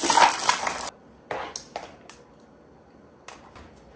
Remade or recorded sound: recorded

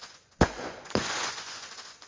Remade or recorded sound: remade